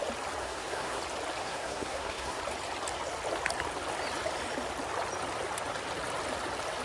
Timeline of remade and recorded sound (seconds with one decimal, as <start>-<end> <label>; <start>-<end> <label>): 0.0-0.4 recorded; 0.4-1.0 remade; 1.0-1.4 recorded; 1.4-2.4 remade; 2.4-6.8 recorded